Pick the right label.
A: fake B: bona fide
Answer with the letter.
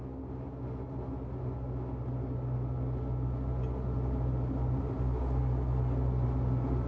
B